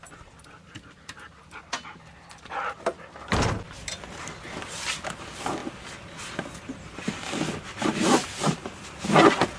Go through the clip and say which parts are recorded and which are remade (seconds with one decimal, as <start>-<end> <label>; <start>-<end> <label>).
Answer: 0.0-9.6 recorded

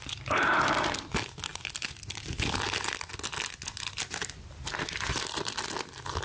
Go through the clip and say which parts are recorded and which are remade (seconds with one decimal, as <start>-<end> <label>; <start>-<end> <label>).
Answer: 0.0-1.5 recorded; 1.5-3.1 remade; 3.1-6.2 recorded

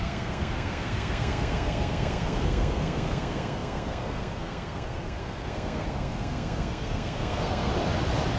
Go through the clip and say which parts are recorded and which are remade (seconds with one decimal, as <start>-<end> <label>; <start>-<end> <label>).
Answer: 0.0-7.7 remade; 7.7-8.4 recorded

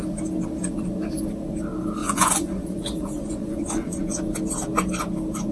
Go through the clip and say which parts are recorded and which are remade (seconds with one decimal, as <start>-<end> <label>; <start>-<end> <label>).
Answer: 0.0-2.0 recorded; 2.0-4.1 remade; 4.1-5.5 recorded